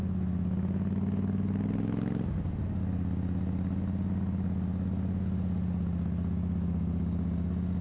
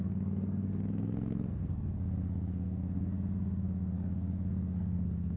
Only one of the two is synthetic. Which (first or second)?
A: second